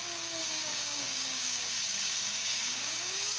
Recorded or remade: remade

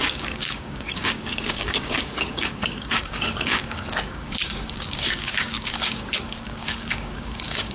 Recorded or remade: remade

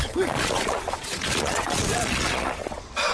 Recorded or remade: remade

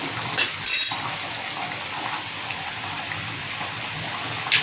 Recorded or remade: recorded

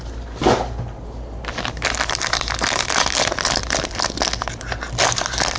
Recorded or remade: recorded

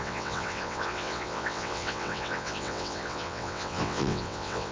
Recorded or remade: remade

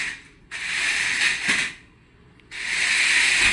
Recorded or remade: recorded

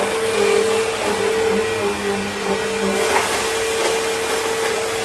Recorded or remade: recorded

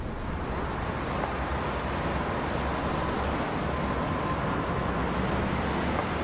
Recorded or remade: recorded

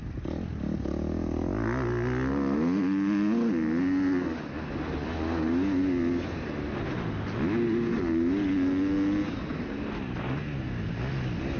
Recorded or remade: recorded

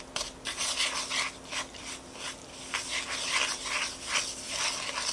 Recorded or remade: recorded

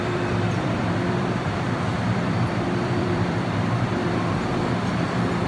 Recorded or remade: remade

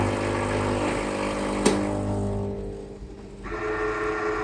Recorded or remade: recorded